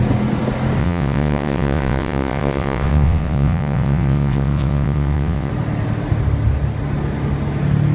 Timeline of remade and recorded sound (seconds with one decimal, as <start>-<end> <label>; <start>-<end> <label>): 0.0-0.8 recorded; 0.8-5.5 remade; 5.5-7.9 recorded